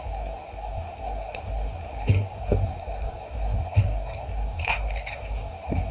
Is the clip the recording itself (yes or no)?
no